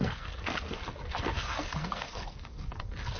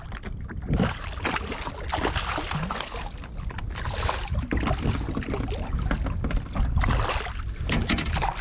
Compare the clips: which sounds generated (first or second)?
first